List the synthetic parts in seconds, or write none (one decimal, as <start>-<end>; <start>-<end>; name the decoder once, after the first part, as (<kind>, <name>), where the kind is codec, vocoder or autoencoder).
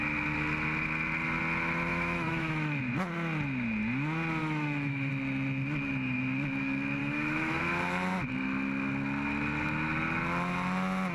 1.9-2.8 (autoencoder, DAC-VAE); 4.4-5.1; 7.0-7.6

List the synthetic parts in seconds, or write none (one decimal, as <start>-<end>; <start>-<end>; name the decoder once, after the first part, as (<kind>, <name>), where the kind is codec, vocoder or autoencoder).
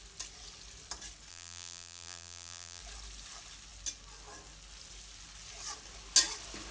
1.3-2.8 (vocoder, BigVGAN v2)